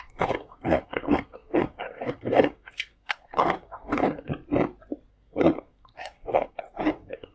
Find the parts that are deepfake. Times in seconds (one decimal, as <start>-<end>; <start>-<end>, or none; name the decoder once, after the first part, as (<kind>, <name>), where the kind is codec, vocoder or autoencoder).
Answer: 0.0-4.3 (codec, SNAC); 5.1-7.3